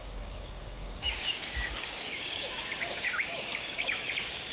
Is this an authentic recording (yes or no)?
no